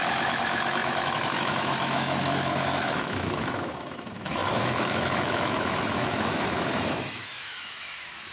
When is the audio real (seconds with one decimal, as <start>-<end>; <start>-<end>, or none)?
none